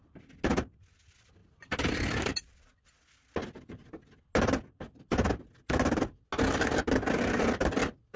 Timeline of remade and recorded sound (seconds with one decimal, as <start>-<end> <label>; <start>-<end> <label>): 0.0-8.2 recorded